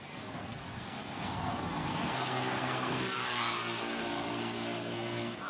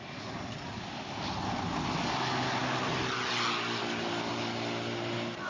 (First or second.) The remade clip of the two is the first